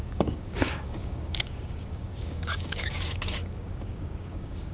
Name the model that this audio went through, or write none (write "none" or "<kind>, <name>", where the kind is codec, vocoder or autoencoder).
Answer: codec, DAC